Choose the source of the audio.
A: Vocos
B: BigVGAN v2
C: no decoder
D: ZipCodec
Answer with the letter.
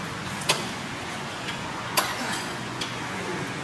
A